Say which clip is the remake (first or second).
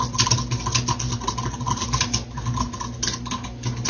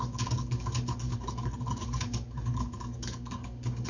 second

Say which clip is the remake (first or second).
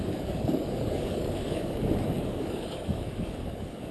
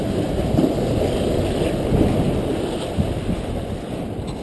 first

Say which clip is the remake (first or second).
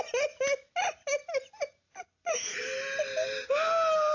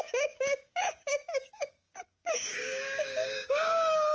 second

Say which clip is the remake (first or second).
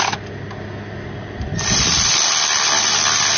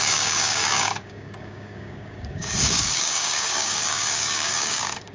second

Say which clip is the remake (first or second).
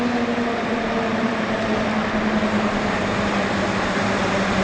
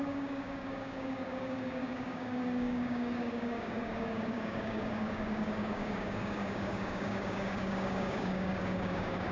second